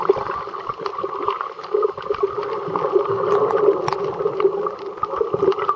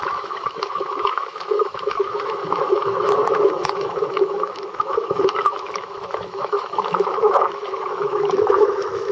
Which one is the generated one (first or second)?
second